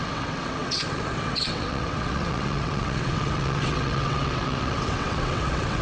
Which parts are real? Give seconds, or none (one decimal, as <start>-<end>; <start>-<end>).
none